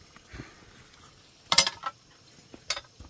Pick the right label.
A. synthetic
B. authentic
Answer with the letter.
B